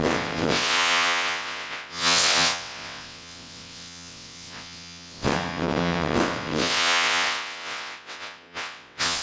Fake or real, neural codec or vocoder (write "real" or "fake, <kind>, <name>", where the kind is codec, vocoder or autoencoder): fake, vocoder, WaveNeXt